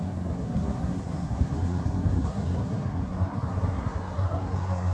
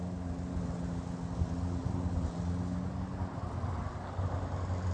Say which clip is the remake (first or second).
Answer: first